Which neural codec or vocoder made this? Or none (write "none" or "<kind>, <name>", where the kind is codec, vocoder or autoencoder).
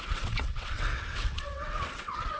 vocoder, WaveNeXt